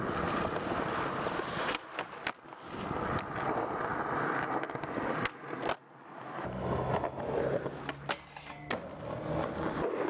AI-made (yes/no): no